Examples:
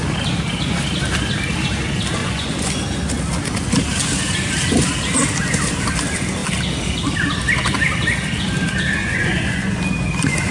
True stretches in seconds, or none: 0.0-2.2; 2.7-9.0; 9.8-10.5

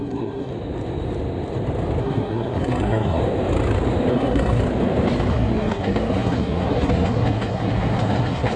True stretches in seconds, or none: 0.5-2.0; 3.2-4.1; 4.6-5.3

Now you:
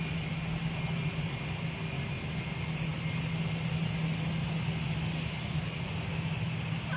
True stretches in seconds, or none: 0.0-7.0